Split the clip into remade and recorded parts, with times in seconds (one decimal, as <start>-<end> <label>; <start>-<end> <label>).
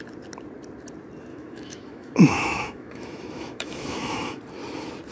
0.0-1.3 recorded; 1.3-4.4 remade; 4.4-5.1 recorded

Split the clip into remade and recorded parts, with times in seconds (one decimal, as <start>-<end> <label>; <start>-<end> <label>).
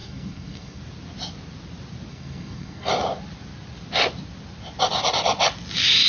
0.0-0.8 remade; 0.8-2.1 recorded; 2.1-2.9 remade; 2.9-6.1 recorded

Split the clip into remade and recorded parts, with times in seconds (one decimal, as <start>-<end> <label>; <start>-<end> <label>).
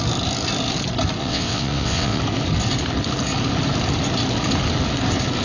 0.0-1.2 recorded; 1.2-2.2 remade; 2.2-5.4 recorded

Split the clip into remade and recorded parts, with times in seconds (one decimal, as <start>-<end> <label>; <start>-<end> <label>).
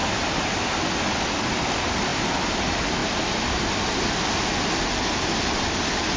0.0-0.5 remade; 0.5-2.1 recorded; 2.1-2.6 remade; 2.6-6.2 recorded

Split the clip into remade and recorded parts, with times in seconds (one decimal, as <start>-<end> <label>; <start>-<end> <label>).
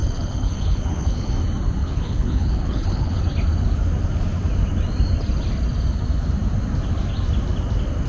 0.0-1.3 remade; 1.3-1.8 recorded; 1.8-3.2 remade; 3.2-8.1 recorded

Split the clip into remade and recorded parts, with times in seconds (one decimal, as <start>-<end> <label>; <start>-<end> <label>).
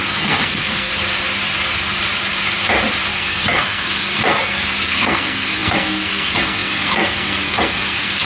0.0-0.9 remade; 0.9-3.1 recorded; 3.1-8.2 remade